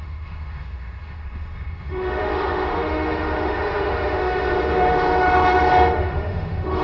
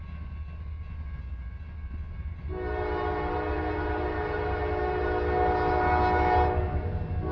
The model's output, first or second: first